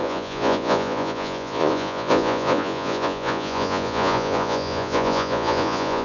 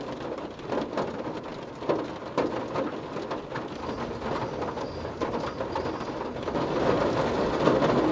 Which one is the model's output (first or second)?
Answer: first